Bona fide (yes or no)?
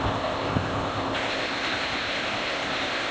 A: no